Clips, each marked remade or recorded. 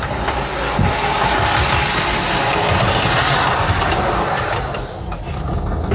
recorded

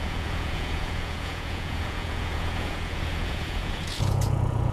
remade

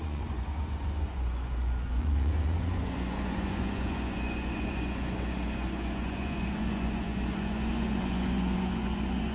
remade